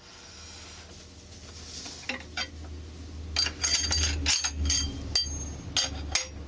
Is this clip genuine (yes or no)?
yes